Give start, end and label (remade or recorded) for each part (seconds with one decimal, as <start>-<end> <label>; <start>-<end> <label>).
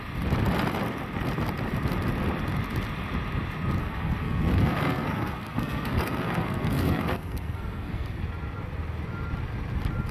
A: 0.0-3.8 recorded; 3.8-8.2 remade; 8.2-10.1 recorded